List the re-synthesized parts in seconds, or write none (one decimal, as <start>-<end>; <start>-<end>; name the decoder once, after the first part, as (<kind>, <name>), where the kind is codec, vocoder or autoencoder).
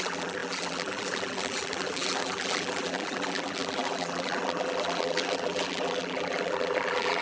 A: 0.0-7.2 (vocoder, BigVGAN v2)